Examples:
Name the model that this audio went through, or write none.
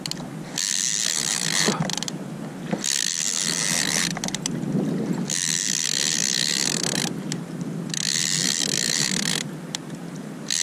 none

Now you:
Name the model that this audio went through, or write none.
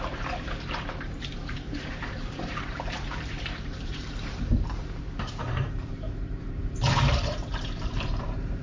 vocoder, BigVGAN v2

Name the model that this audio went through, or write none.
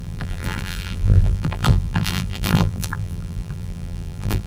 vocoder, BigVGAN v2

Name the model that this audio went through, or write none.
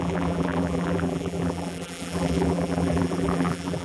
vocoder, BigVGAN v2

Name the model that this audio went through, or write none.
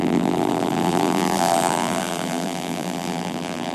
vocoder, BigVGAN v2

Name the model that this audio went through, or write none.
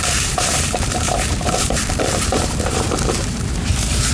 vocoder, BigVGAN v2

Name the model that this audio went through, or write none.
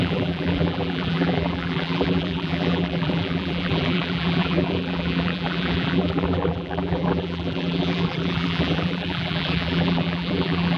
vocoder, BigVGAN v2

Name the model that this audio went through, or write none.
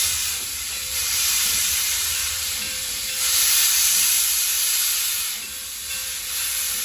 vocoder, BigVGAN v2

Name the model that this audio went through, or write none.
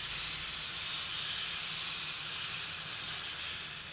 none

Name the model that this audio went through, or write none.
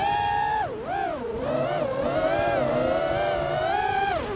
vocoder, BigVGAN v2